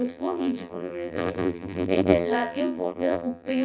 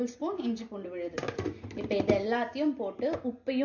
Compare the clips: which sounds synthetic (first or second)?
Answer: first